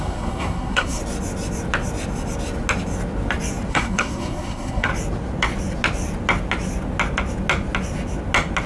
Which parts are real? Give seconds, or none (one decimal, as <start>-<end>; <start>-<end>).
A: 1.0-3.7; 4.9-8.7